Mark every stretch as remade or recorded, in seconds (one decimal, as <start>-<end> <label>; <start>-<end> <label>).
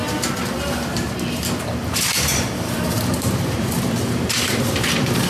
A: 0.0-1.8 recorded; 1.8-5.3 remade